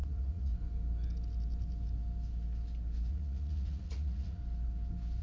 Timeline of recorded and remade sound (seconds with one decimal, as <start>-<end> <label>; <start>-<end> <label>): 0.0-0.5 remade; 0.5-3.1 recorded; 3.1-4.4 remade; 4.4-5.2 recorded